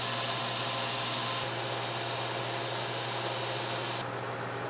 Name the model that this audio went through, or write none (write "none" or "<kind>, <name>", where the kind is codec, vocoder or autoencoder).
none